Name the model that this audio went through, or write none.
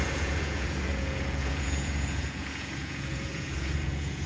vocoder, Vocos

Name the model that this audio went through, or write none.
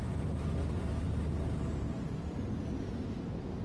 none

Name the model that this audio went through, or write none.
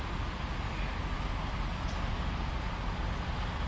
none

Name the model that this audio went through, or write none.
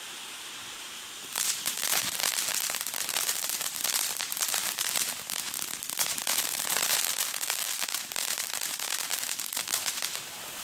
vocoder, BigVGAN v2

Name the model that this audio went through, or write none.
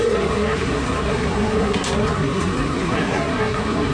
codec, SNAC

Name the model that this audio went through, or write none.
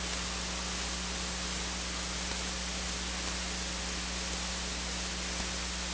none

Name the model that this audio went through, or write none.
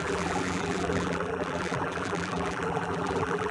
vocoder, BigVGAN v2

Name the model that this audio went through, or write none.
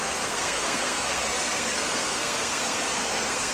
codec, SNAC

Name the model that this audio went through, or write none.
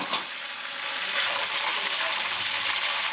none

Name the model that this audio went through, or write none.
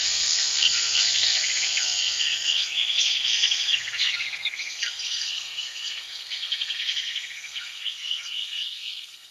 codec, SNAC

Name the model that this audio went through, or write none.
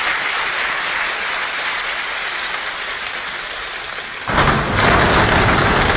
none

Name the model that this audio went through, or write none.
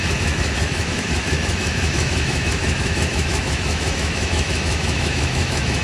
autoencoder, DAC-VAE